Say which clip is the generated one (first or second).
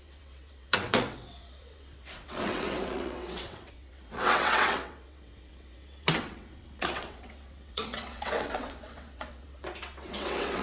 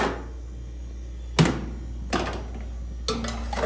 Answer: first